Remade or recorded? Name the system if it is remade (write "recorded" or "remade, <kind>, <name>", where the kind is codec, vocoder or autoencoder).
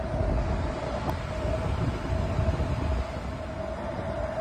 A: recorded